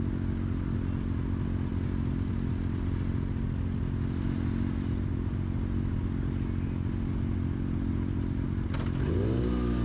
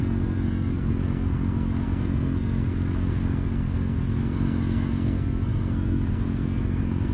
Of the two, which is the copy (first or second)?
second